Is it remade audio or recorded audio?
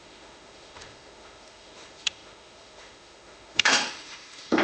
remade